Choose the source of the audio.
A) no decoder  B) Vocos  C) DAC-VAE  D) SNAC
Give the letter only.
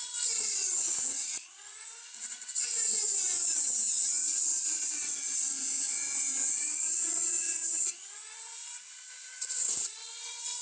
B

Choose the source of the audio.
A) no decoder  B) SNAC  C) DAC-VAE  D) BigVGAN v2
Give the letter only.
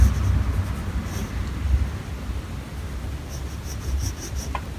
A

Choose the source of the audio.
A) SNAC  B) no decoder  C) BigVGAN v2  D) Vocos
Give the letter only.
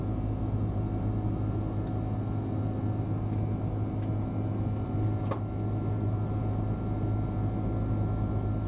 B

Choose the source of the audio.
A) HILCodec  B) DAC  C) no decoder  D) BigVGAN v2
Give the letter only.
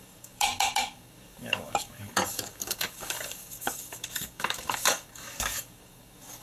B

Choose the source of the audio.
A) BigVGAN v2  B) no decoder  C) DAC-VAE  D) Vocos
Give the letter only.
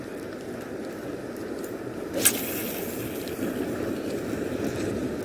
B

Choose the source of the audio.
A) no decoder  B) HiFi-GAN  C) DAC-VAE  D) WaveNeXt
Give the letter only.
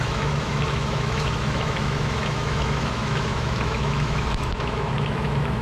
C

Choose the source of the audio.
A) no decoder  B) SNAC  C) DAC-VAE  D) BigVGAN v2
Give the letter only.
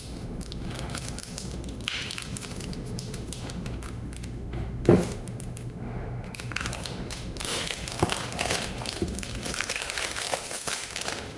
C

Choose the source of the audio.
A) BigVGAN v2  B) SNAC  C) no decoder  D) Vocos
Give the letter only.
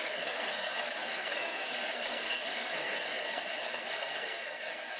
B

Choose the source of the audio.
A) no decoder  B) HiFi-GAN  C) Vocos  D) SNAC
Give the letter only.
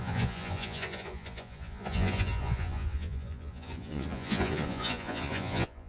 C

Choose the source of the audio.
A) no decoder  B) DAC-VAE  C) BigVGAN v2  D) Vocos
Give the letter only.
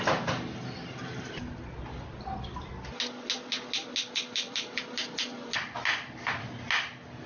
A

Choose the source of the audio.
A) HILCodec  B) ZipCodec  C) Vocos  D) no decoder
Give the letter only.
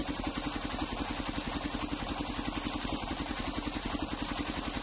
D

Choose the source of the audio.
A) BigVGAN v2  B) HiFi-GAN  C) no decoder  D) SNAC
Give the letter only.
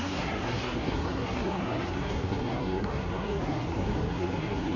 D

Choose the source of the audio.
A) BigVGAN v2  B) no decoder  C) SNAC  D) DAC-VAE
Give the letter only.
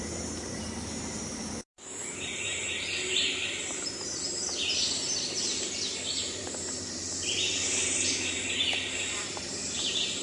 A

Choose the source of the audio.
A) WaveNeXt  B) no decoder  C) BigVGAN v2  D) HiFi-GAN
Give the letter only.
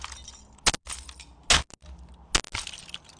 B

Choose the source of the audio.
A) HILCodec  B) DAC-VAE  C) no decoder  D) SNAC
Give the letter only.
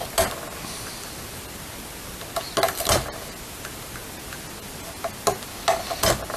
C